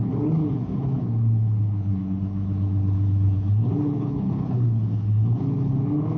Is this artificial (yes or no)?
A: yes